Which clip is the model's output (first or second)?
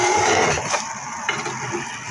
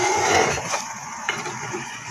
second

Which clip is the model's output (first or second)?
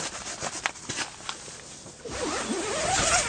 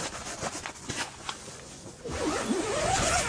second